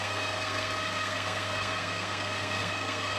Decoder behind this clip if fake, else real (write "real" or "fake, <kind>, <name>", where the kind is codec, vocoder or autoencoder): fake, codec, SNAC